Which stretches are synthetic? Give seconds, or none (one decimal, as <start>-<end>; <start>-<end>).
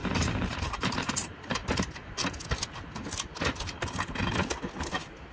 0.0-1.6; 4.8-5.3